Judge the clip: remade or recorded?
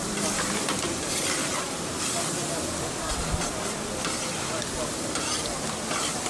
remade